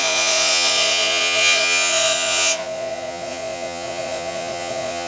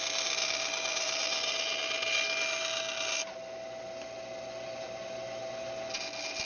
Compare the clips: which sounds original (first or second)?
second